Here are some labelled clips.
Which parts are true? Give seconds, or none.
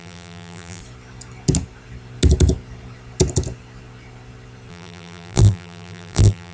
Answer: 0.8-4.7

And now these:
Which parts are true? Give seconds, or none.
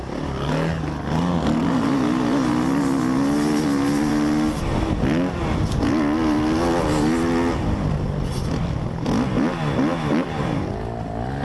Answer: 0.0-11.4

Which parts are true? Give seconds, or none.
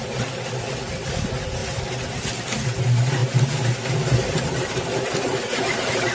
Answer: 0.0-6.1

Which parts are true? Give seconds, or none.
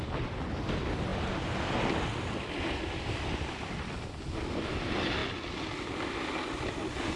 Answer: 0.0-7.2